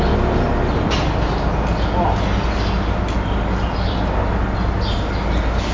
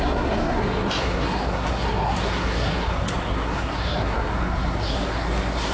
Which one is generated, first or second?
second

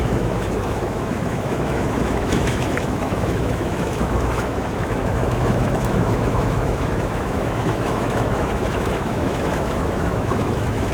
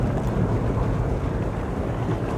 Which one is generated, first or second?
first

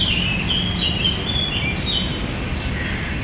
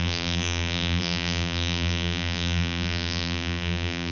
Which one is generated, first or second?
second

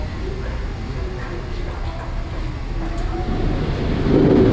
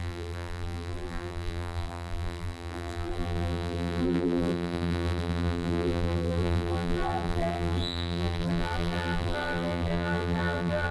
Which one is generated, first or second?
second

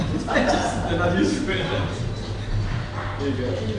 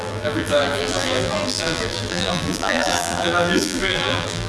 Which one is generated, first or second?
second